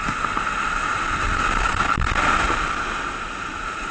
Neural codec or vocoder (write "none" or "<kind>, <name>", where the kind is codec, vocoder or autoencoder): none